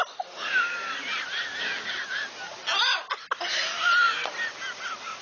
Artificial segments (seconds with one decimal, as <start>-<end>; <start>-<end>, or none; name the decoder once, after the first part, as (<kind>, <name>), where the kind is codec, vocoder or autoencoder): none